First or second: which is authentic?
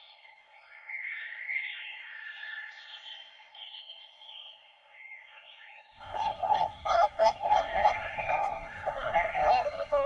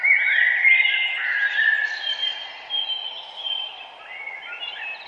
second